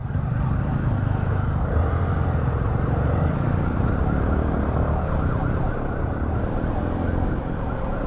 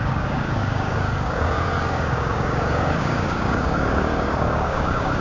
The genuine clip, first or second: first